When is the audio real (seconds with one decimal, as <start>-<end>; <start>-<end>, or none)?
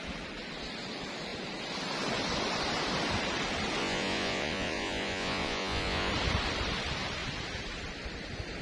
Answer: 0.0-3.8; 6.1-8.6